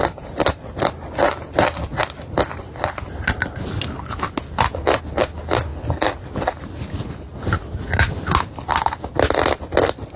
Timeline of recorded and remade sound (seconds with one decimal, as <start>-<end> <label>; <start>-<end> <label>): 0.0-10.2 recorded